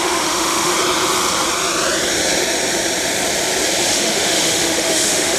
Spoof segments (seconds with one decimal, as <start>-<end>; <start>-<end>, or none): 0.0-0.7; 3.9-5.4